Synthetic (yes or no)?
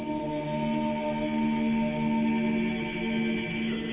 no